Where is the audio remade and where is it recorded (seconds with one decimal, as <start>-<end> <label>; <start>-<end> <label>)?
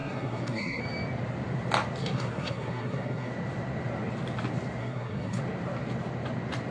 0.0-0.8 remade; 0.8-2.0 recorded; 2.0-3.3 remade; 3.3-4.8 recorded; 4.8-5.4 remade; 5.4-6.7 recorded